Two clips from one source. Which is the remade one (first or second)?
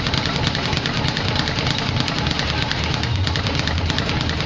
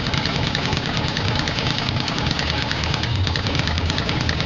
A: second